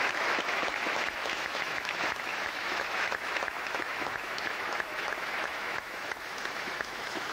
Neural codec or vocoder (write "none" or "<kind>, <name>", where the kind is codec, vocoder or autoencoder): autoencoder, DAC-VAE